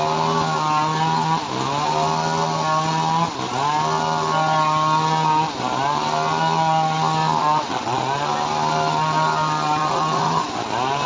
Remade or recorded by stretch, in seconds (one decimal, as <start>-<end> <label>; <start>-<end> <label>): 0.0-7.4 recorded; 7.4-8.0 remade; 8.0-9.8 recorded; 9.8-10.6 remade; 10.6-11.1 recorded